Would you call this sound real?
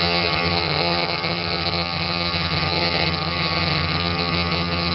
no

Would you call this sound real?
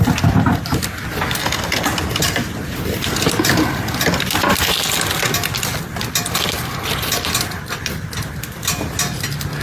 yes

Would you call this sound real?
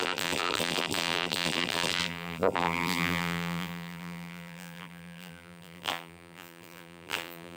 no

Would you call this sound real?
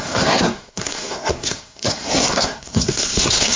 no